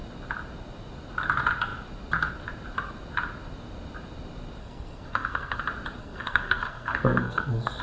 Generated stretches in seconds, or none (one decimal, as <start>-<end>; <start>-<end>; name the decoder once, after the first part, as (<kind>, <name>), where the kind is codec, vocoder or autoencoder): 4.6-5.6 (codec, SNAC); 6.0-7.8

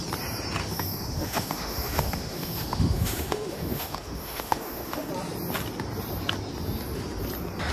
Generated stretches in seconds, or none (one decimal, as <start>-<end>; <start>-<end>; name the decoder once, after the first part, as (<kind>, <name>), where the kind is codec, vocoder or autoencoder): 0.6-5.1 (autoencoder, DAC-VAE)

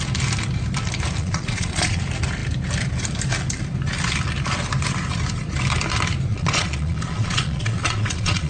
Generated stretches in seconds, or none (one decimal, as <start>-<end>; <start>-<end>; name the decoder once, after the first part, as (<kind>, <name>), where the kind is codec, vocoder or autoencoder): 1.2-2.0 (vocoder, Vocos); 6.3-8.5

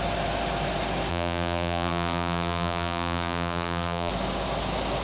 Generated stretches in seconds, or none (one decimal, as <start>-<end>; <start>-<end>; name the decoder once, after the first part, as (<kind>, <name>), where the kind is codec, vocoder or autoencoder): 1.1-4.1 (vocoder, BigVGAN v2)

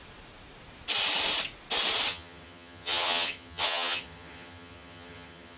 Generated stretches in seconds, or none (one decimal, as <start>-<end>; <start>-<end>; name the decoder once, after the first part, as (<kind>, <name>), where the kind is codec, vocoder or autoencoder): 2.1-5.6 (vocoder, HiFi-GAN)

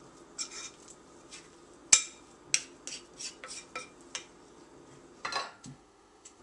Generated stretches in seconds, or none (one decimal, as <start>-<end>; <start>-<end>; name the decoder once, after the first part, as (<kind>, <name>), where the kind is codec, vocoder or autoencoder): 5.4-6.4 (autoencoder, DAC-VAE)

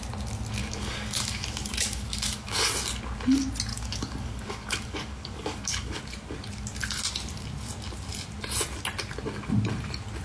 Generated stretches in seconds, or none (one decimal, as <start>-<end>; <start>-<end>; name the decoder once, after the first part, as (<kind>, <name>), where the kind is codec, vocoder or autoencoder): 0.6-2.7 (codec, DAC); 3.7-6.0

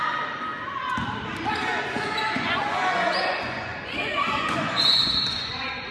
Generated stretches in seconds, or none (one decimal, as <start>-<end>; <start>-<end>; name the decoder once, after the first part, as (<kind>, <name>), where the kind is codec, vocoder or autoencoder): 0.0-0.5 (vocoder, Vocos); 1.6-5.9